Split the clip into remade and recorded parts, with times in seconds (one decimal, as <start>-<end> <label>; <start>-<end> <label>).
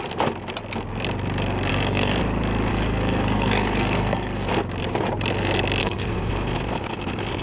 0.0-1.7 recorded; 1.7-2.2 remade; 2.2-2.7 recorded; 2.7-4.5 remade; 4.5-5.8 recorded; 5.8-6.3 remade; 6.3-7.4 recorded